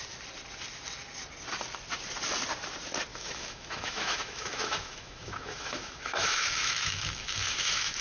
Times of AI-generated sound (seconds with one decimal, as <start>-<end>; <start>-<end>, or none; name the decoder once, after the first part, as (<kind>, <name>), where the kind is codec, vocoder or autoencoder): 3.1-8.0 (autoencoder, DAC-VAE)